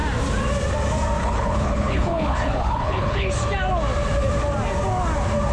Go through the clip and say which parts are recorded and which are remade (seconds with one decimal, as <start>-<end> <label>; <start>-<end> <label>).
0.0-1.2 recorded; 1.2-3.3 remade; 3.3-5.5 recorded